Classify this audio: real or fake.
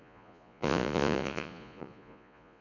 fake